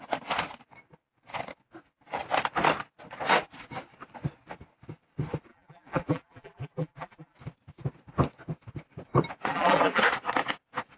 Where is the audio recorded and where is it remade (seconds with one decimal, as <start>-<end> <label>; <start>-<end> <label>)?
0.0-5.5 recorded; 5.5-7.4 remade; 7.4-9.5 recorded; 9.5-10.0 remade; 10.0-11.0 recorded

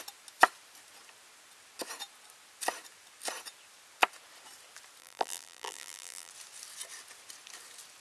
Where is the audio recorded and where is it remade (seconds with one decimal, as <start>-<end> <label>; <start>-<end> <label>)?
0.0-5.0 recorded; 5.0-6.3 remade; 6.3-8.0 recorded